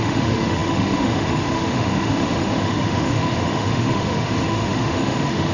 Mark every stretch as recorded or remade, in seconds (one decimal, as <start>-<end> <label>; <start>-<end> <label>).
0.0-5.5 remade